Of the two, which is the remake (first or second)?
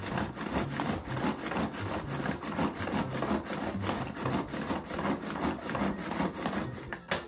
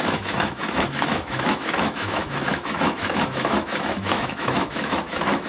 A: second